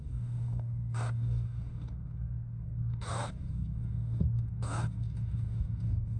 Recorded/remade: remade